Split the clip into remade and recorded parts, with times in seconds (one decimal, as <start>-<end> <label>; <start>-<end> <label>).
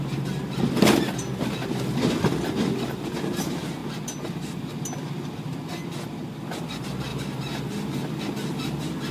0.0-9.1 recorded